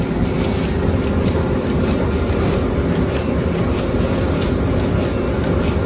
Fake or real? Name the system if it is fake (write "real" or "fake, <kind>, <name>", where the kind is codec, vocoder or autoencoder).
real